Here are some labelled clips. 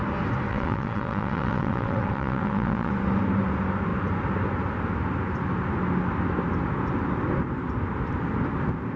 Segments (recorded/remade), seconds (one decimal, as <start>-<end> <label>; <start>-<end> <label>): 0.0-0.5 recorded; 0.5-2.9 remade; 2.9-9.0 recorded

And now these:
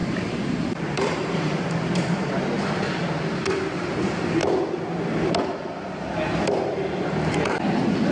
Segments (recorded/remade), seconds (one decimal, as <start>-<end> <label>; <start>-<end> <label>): 0.0-2.3 remade; 2.3-8.1 recorded

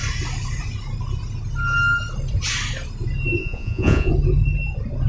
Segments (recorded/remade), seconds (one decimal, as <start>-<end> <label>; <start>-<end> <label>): 0.0-3.4 recorded; 3.4-4.1 remade; 4.1-5.1 recorded

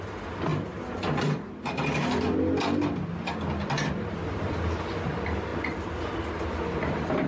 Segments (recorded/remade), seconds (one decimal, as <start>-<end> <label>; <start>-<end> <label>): 0.0-0.5 remade; 0.5-3.9 recorded; 3.9-5.5 remade; 5.5-6.3 recorded; 6.3-7.3 remade

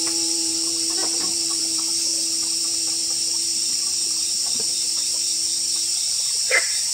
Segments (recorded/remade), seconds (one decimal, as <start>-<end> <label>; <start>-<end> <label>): 0.0-2.1 remade; 2.1-2.6 recorded; 2.6-6.9 remade

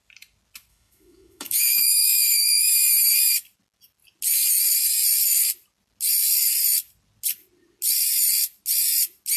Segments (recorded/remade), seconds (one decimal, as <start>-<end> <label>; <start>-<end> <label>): 0.0-0.7 recorded; 0.7-2.7 remade; 2.7-9.4 recorded

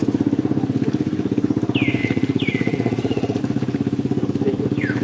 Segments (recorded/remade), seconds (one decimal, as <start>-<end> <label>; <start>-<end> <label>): 0.0-2.0 recorded; 2.0-3.4 remade; 3.4-5.0 recorded